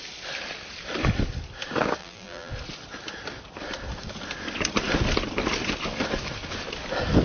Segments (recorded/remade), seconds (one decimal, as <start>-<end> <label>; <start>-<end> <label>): 0.0-2.0 recorded; 2.0-2.5 remade; 2.5-7.2 recorded